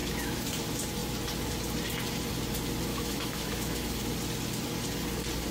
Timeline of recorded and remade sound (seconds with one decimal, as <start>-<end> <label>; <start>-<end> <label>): 0.0-0.6 remade; 0.6-2.9 recorded; 2.9-4.1 remade; 4.1-5.5 recorded